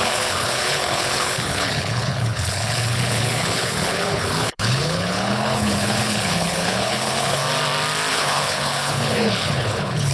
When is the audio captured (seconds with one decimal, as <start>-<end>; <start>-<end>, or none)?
7.4-8.1